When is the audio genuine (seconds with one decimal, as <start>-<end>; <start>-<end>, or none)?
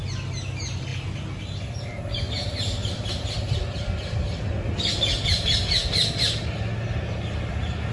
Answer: 0.0-7.9